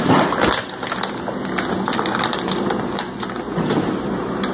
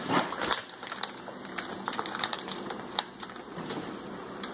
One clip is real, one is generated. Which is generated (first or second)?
second